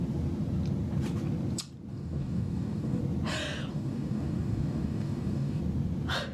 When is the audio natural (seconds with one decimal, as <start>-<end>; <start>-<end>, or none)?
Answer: 0.0-1.9; 3.0-3.7; 5.6-6.3